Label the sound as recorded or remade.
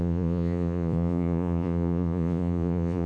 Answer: remade